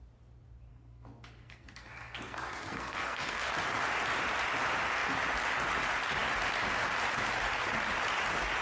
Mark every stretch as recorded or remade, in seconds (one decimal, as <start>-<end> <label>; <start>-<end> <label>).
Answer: 0.0-0.7 recorded; 0.7-3.5 remade; 3.5-8.6 recorded